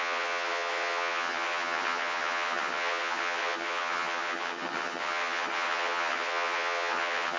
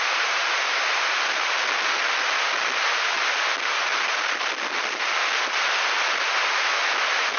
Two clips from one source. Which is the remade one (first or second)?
first